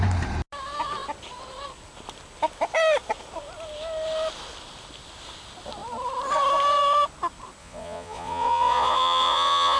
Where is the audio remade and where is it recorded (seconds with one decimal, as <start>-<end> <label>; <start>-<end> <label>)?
0.0-7.6 recorded; 7.6-9.8 remade